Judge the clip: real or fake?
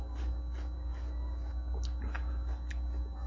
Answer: real